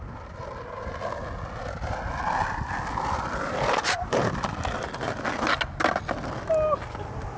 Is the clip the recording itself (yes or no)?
yes